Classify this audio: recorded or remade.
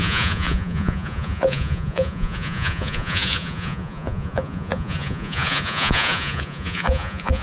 remade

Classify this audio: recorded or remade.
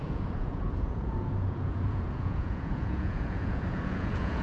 remade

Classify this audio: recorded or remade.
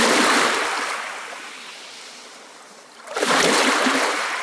recorded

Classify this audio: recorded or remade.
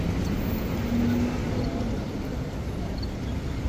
recorded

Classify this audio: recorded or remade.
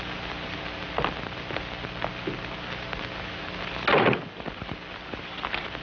recorded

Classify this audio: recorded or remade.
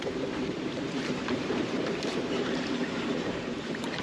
remade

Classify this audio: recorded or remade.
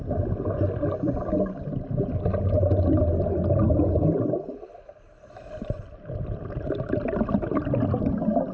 recorded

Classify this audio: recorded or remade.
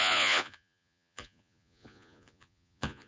remade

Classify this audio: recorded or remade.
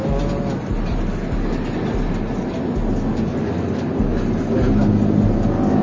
recorded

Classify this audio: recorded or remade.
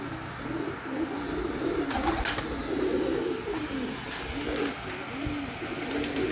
recorded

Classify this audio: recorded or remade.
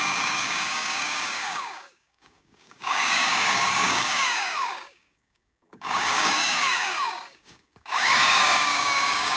remade